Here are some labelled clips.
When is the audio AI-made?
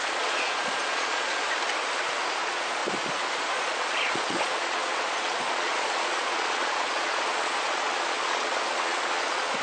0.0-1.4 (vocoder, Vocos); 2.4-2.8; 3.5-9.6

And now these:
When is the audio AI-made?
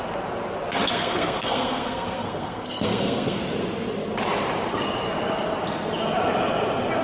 0.9-3.4 (codec, SNAC)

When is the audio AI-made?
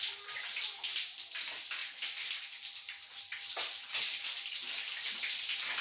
none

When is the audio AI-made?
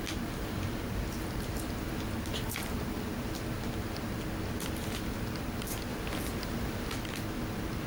none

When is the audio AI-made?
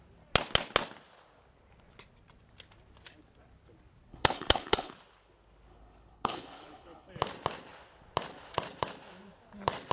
4.1-4.9 (codec, HILCodec); 5.7-7.1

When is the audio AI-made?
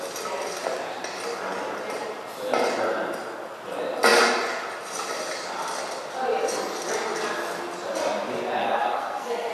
8.6-9.5 (codec, SNAC)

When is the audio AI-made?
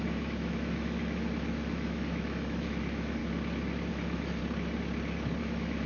0.0-3.2 (autoencoder, DAC-VAE); 3.9-4.4; 5.4-5.9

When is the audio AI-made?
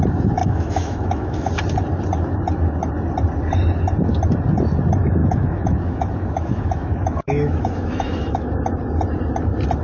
0.4-1.5 (autoencoder, DAC-VAE); 5.2-8.5